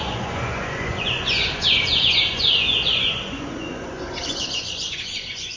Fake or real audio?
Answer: fake